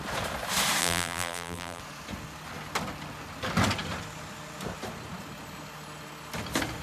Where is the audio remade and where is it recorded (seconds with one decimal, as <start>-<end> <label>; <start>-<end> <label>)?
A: 0.0-0.8 recorded; 0.8-1.8 remade; 1.8-6.8 recorded